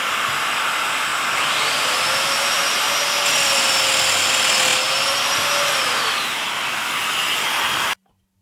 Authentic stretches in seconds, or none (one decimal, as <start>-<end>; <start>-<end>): 0.0-1.1; 2.8-8.4